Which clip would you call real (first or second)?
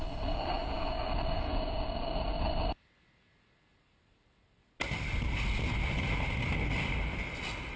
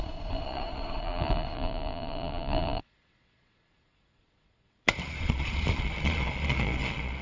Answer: first